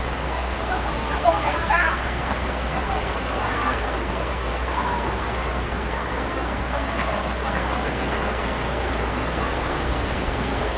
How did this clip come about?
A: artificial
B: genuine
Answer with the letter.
A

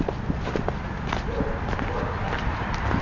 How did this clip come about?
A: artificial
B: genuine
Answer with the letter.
B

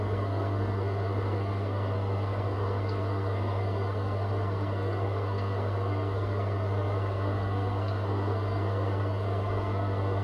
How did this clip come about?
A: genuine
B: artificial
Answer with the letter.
B